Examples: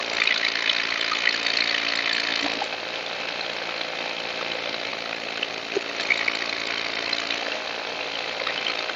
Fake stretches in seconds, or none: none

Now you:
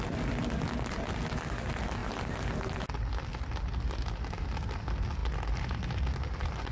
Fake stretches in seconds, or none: none

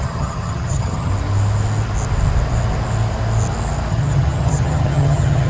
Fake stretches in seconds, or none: 0.0-1.1 (vocoder, HiFi-GAN); 3.9-5.5

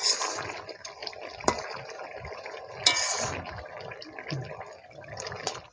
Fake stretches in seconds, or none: 0.0-5.7 (vocoder, BigVGAN v2)

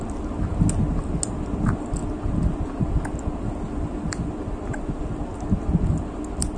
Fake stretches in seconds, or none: none

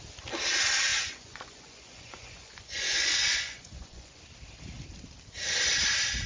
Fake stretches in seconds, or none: 0.9-4.2 (vocoder, Vocos)

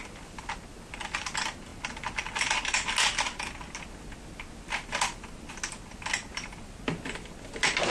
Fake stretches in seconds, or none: none

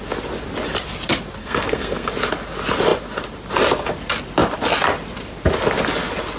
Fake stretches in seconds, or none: 1.4-2.1 (codec, SNAC)